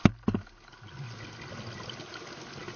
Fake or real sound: real